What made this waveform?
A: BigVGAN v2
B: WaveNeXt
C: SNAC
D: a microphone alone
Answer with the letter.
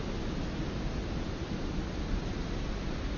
D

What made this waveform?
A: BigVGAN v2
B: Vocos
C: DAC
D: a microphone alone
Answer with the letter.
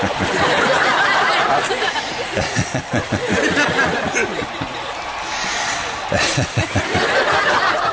D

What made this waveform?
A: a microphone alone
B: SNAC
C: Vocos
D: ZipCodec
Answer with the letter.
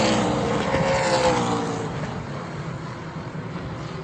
A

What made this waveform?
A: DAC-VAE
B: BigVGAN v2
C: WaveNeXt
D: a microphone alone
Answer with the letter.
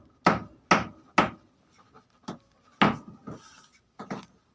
D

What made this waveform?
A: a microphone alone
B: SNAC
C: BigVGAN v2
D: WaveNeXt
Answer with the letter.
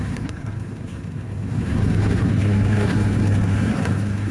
B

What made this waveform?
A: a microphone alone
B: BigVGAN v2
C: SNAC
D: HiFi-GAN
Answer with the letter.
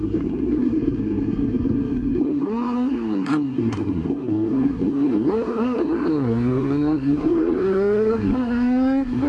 C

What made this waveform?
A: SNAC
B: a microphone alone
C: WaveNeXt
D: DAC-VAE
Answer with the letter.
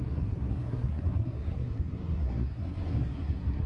A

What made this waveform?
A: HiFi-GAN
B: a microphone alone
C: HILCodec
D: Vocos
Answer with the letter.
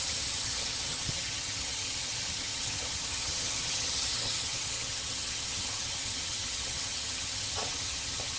A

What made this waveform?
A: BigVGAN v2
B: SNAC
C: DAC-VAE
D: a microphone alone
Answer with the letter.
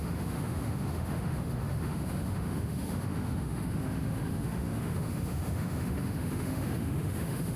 C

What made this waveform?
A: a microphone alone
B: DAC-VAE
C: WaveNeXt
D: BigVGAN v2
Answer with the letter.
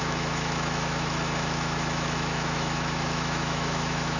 B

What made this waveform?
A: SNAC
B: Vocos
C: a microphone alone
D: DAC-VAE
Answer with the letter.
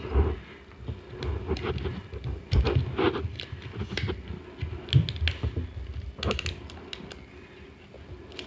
C